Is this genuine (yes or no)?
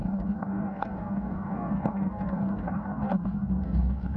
no